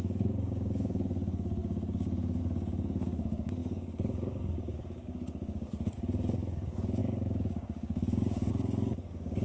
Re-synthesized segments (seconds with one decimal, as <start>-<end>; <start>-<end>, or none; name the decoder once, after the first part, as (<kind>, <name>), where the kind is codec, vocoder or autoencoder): 0.0-9.4 (codec, DAC)